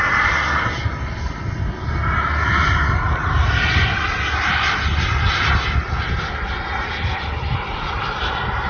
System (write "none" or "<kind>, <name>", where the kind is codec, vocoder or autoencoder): none